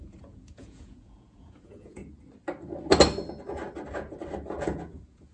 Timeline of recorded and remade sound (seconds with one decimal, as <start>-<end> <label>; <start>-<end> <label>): 0.0-2.0 remade; 2.0-4.6 recorded; 4.6-5.3 remade